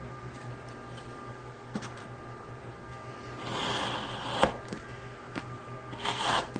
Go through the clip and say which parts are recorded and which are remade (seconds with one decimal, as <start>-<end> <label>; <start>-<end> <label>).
0.0-0.5 remade; 0.5-1.3 recorded; 1.3-2.0 remade; 2.0-2.6 recorded; 2.6-3.1 remade; 3.1-4.7 recorded; 4.7-6.6 remade